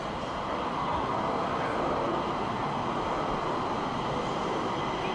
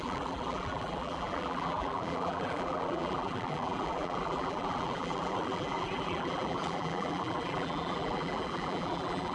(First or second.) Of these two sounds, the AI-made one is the second